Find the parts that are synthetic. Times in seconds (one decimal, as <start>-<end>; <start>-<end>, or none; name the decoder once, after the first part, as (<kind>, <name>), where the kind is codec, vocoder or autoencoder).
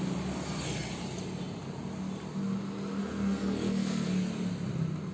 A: 3.0-4.1 (codec, SNAC)